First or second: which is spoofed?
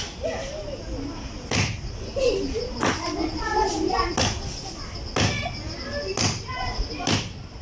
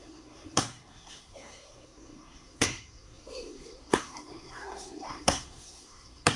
second